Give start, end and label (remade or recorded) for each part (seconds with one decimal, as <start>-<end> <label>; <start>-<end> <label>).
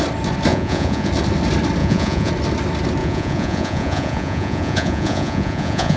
0.0-0.5 recorded; 0.5-1.1 remade; 1.1-1.8 recorded; 1.8-2.3 remade; 2.3-3.0 recorded; 3.0-6.0 remade